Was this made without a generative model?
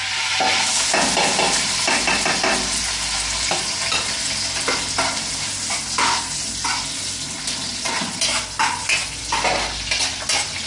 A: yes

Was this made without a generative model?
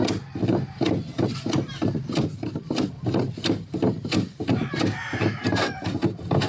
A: yes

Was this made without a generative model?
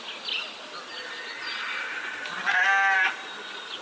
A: yes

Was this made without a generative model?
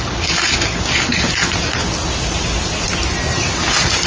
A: yes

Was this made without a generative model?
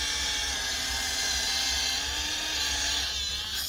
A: yes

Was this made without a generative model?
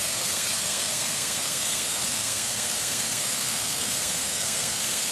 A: no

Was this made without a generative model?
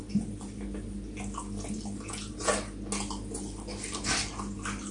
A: yes